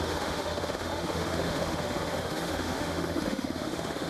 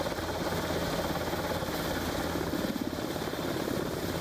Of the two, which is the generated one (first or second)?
first